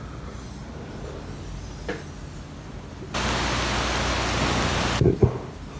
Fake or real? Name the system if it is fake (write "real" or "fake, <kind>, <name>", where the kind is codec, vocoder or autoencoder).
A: real